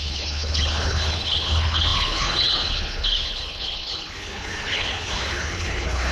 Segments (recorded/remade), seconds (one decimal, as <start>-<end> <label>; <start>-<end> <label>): 0.0-6.1 remade

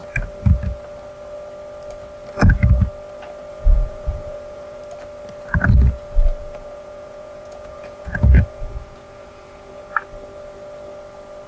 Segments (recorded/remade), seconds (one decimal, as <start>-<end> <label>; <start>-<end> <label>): 0.0-3.5 recorded; 3.5-4.8 remade; 4.8-6.4 recorded; 6.4-9.9 remade; 9.9-11.5 recorded

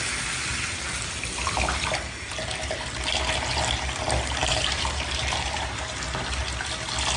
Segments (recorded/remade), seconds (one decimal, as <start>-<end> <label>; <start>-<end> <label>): 0.0-4.4 recorded; 4.4-5.9 remade; 5.9-7.2 recorded

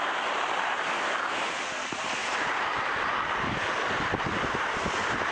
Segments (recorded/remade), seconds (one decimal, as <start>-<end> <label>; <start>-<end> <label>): 0.0-5.3 recorded

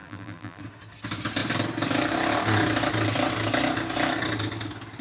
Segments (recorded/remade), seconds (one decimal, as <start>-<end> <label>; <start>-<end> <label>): 0.0-0.6 remade; 0.6-5.0 recorded